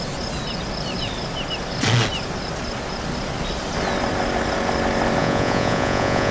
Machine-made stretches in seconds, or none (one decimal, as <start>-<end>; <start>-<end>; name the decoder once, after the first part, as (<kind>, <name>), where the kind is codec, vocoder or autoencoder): 5.2-6.3 (vocoder, Vocos)